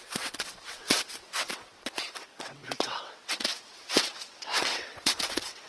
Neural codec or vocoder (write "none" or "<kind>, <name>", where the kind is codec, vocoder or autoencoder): vocoder, WaveNeXt